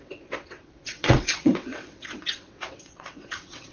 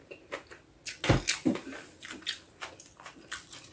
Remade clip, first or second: first